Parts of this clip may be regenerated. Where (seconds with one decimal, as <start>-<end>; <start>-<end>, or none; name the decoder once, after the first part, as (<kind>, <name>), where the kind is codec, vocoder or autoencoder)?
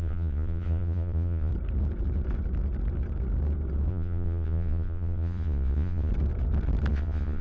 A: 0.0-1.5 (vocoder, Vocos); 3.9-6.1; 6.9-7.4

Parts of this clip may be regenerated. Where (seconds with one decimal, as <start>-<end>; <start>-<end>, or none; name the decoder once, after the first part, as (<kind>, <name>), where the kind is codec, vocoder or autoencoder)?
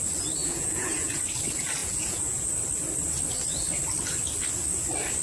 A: 0.4-1.2 (vocoder, Vocos); 1.8-2.5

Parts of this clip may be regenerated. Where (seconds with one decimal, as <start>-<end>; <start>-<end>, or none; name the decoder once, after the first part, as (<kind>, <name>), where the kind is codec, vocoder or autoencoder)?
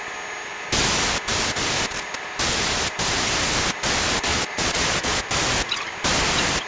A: 4.3-5.2 (vocoder, Vocos)